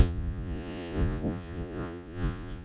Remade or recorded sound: remade